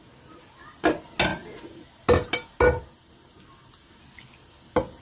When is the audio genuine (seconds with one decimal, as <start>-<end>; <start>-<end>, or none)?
0.0-5.0